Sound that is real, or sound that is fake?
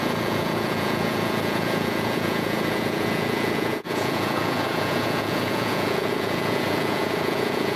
fake